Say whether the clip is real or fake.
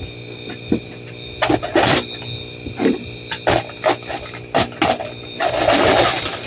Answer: real